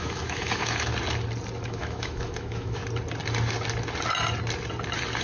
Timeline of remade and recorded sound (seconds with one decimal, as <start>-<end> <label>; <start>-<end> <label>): 0.0-0.9 remade; 0.9-1.6 recorded; 1.6-2.8 remade; 2.8-5.2 recorded

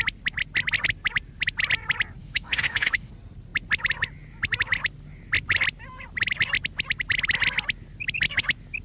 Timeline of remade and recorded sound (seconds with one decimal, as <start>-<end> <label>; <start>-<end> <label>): 0.0-2.2 recorded; 2.2-3.1 remade; 3.1-8.8 recorded